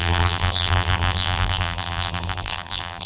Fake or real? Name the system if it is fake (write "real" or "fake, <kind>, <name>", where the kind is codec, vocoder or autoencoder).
fake, vocoder, BigVGAN v2